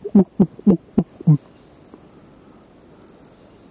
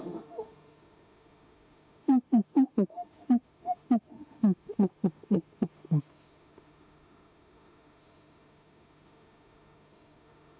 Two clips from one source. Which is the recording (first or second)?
first